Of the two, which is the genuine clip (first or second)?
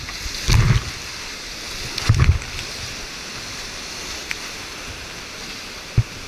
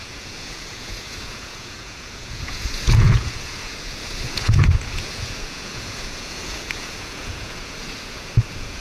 first